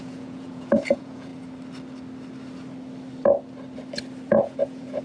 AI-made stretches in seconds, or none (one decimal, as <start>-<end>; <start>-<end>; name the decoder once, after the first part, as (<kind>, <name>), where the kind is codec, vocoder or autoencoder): 0.0-1.3 (vocoder, Vocos); 4.3-5.0